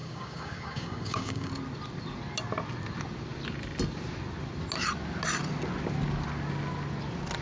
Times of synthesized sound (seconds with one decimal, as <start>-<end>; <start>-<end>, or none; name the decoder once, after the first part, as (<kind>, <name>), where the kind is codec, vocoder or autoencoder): 0.0-1.5 (codec, DAC)